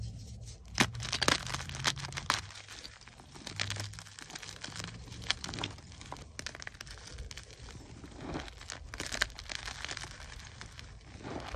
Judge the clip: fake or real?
real